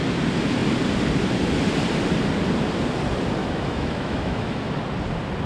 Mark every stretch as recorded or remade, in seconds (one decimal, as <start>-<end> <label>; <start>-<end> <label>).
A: 0.0-3.4 recorded; 3.4-4.8 remade; 4.8-5.5 recorded